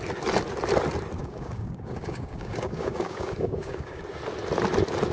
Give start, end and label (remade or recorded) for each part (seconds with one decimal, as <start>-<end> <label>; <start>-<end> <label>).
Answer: 0.0-1.2 recorded; 1.2-4.0 remade; 4.0-5.1 recorded